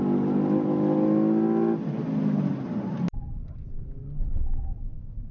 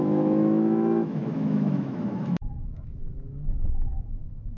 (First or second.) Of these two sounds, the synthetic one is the second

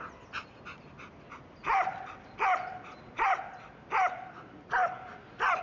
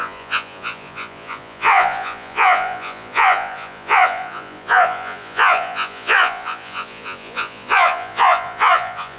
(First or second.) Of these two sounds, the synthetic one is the second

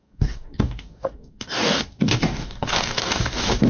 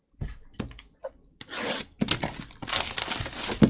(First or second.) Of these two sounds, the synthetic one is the first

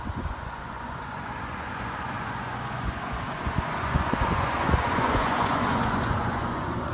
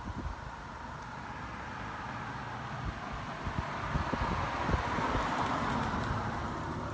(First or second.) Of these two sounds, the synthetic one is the first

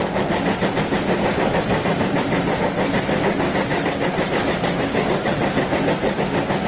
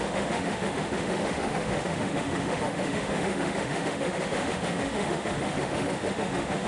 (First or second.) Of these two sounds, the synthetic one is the second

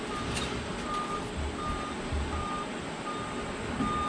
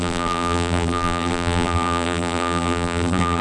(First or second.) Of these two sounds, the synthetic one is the second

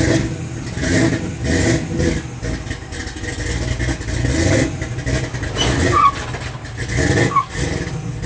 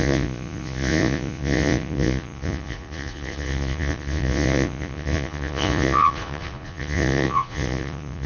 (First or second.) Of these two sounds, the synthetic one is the second